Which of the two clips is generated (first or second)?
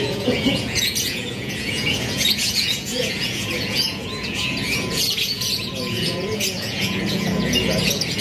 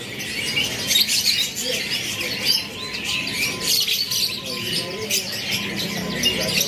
first